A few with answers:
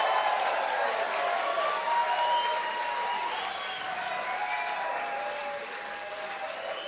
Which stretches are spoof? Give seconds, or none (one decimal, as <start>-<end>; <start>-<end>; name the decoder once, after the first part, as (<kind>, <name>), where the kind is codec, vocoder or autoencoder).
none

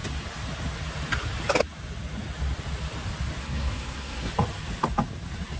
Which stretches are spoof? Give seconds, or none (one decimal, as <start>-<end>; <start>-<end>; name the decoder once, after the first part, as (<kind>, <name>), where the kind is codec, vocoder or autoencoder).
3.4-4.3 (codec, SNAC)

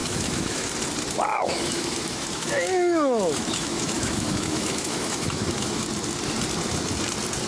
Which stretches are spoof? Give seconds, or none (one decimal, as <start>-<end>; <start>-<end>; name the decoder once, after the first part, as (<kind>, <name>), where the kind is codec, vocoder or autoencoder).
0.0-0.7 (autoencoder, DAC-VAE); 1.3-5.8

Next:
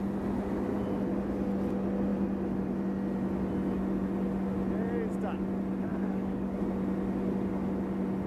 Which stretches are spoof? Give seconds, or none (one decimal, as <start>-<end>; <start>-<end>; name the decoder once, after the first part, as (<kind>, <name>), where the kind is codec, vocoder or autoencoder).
5.9-6.6 (codec, DAC)